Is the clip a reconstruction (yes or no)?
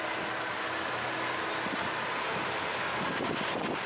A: no